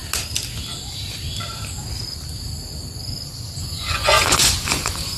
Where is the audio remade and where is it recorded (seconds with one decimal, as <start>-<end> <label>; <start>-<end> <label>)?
0.0-3.6 recorded; 3.6-5.2 remade